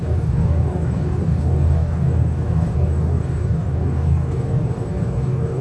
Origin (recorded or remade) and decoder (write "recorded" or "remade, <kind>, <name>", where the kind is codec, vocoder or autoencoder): remade, codec, DAC